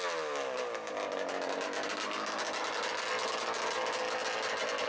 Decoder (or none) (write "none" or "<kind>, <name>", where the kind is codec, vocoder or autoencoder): none